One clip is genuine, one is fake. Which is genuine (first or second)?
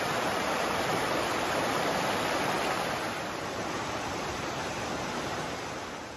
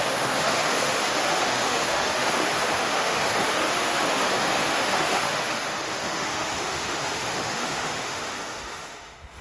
first